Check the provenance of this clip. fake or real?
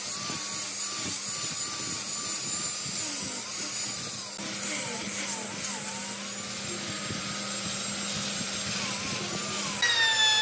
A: real